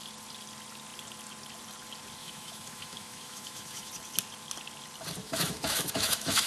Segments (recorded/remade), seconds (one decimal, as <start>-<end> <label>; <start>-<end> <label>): 0.0-2.2 recorded; 2.2-3.9 remade; 3.9-5.2 recorded; 5.2-6.5 remade